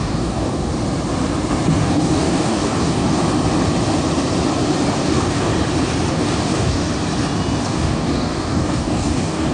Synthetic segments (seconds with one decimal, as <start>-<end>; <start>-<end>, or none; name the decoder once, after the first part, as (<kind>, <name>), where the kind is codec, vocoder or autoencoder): 0.0-0.7 (codec, DAC); 1.8-3.2; 4.9-5.5; 6.1-6.9; 7.6-9.5